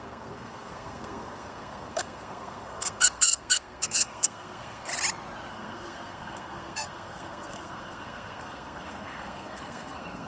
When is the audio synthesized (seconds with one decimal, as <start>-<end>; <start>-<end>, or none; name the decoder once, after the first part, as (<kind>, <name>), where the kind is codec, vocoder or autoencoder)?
0.0-4.9 (codec, SNAC); 5.5-10.3